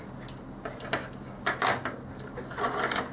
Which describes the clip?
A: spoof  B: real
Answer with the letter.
B